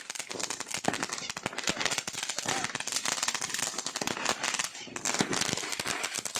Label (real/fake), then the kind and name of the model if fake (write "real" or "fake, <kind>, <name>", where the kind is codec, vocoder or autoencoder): real